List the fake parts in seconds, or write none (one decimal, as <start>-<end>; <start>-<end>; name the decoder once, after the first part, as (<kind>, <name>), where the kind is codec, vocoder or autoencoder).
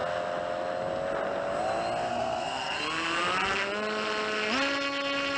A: 2.1-2.8 (codec, SNAC)